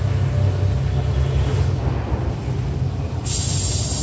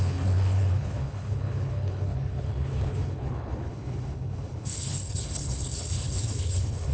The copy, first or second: second